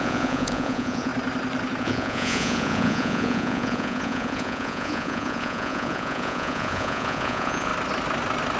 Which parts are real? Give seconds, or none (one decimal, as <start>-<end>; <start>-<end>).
1.1-1.8; 7.7-8.6